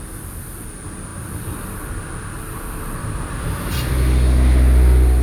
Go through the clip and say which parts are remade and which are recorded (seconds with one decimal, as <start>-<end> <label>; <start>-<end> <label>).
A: 0.0-3.0 recorded; 3.0-3.9 remade; 3.9-5.2 recorded